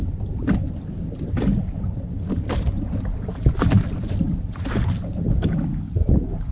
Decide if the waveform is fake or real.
real